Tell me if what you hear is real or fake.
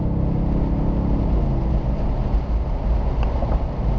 real